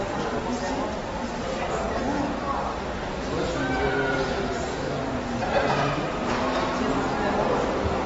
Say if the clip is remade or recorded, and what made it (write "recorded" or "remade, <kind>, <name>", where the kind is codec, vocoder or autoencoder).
recorded